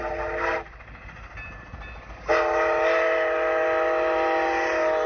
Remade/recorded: recorded